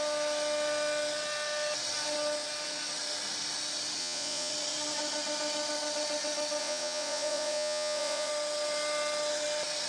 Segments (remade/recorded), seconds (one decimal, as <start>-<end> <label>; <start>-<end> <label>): 0.0-4.0 recorded; 4.0-4.5 remade; 4.5-6.6 recorded; 6.6-8.3 remade; 8.3-9.9 recorded

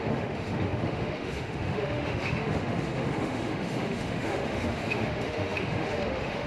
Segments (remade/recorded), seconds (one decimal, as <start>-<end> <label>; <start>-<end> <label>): 0.0-6.5 remade

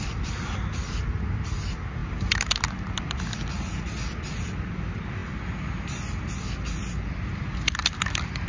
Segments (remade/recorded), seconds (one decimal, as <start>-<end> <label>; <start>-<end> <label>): 0.0-8.5 recorded

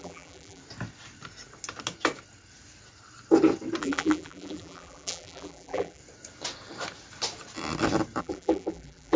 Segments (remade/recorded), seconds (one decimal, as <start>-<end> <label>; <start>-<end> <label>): 0.0-0.6 remade; 0.6-3.8 recorded; 3.8-6.0 remade; 6.0-8.2 recorded; 8.2-9.2 remade

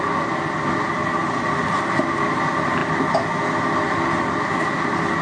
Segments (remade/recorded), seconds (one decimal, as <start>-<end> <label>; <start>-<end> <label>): 0.0-5.2 recorded